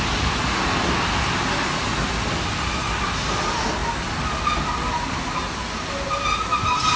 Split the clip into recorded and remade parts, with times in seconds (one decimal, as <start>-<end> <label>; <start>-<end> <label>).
0.0-7.0 recorded